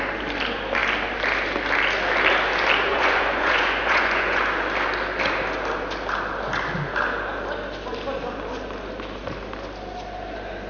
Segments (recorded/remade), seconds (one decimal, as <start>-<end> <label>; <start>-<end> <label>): 0.0-2.9 recorded; 2.9-4.4 remade; 4.4-10.7 recorded